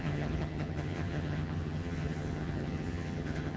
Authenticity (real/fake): fake